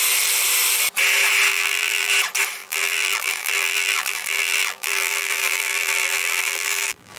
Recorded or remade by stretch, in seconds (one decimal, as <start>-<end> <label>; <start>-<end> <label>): 0.0-1.5 recorded; 1.5-2.1 remade; 2.1-2.6 recorded; 2.6-7.2 remade